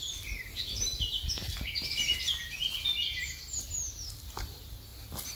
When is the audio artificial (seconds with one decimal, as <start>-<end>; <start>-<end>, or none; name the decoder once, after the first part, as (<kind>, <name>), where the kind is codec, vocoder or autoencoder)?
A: none